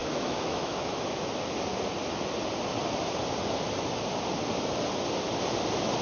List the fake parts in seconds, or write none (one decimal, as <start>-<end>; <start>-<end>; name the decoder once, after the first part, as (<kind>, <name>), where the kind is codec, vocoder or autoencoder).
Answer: 0.0-1.0 (autoencoder, DAC-VAE)